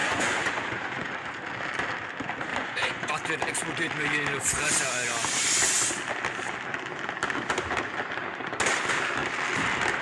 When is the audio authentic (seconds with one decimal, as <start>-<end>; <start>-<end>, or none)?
1.4-2.5; 3.1-10.0